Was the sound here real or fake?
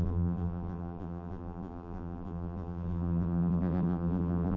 fake